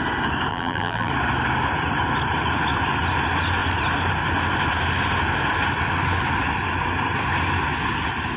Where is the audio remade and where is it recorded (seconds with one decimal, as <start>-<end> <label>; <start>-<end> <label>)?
0.0-0.5 recorded; 0.5-1.1 remade; 1.1-8.4 recorded